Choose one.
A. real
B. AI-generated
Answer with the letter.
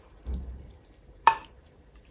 B